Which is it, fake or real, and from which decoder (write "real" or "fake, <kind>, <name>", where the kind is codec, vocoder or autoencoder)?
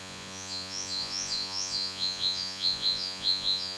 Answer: fake, vocoder, Vocos